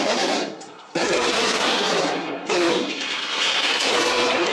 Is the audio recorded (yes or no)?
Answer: no